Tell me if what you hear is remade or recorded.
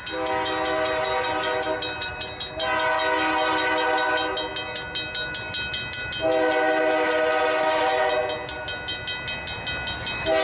recorded